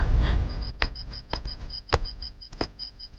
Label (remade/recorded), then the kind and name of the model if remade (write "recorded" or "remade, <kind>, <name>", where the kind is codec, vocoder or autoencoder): recorded